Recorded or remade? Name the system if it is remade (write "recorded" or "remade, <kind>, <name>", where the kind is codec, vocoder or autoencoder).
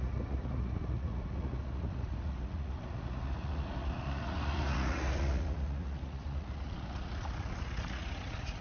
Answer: remade, vocoder, Vocos